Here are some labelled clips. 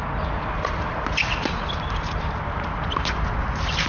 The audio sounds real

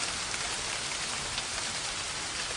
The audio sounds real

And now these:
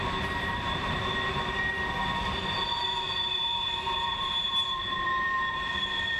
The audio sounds fake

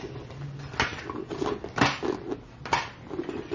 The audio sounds real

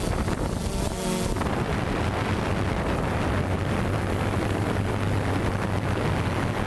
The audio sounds real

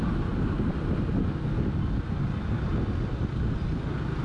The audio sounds real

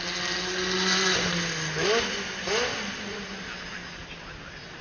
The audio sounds real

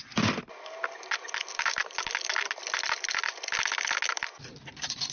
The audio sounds real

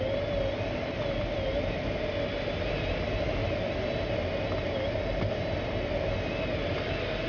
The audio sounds real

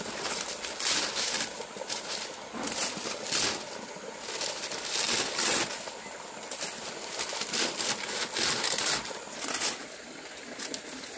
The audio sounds real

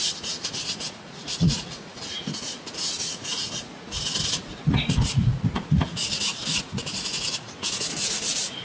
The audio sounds fake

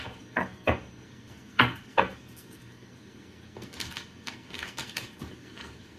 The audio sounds fake